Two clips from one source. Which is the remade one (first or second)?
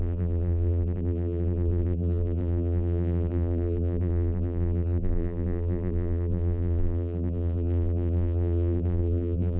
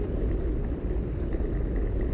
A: first